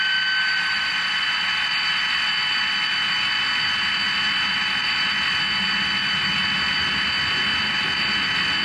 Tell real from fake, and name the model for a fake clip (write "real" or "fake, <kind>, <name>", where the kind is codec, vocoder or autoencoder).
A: real